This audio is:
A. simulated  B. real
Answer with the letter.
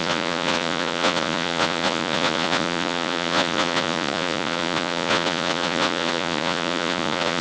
A